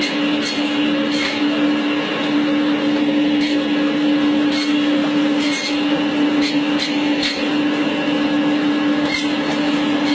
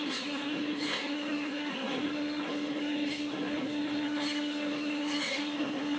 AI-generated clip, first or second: second